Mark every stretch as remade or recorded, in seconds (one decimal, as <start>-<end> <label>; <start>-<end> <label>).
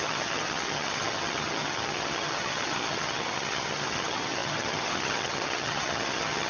0.0-6.5 remade